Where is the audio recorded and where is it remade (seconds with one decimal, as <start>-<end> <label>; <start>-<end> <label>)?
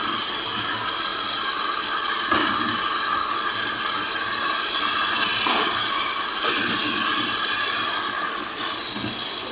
0.0-5.3 remade; 5.3-6.5 recorded; 6.5-9.5 remade